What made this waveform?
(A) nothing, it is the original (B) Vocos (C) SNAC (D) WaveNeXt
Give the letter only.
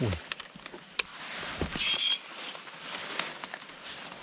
A